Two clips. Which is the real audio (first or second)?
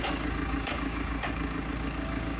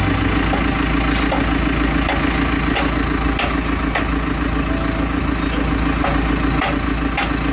second